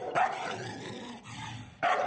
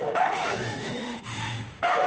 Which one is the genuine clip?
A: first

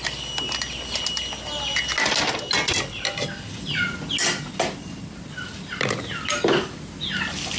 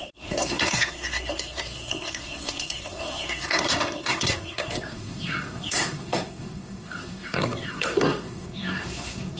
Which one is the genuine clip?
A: first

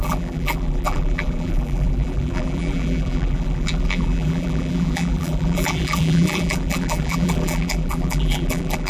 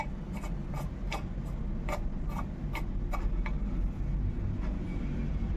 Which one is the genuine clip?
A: second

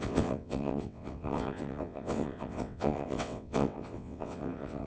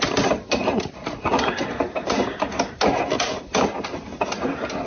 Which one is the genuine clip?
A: second